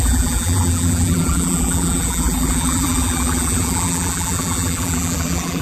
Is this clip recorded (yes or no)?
no